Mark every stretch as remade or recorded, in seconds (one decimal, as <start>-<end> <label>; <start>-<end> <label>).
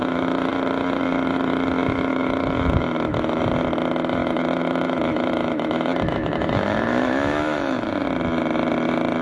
0.0-0.5 remade; 0.5-2.1 recorded; 2.1-3.4 remade; 3.4-4.2 recorded; 4.2-7.9 remade; 7.9-9.2 recorded